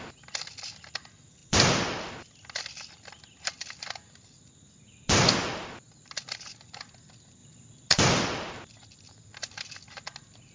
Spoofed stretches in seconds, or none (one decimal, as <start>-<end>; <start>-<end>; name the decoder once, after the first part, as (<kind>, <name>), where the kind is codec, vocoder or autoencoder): none